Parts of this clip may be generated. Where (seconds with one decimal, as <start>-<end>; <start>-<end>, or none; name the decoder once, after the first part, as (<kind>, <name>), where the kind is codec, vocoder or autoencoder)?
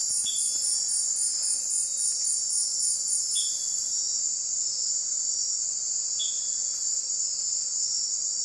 5.8-6.3 (vocoder, Vocos)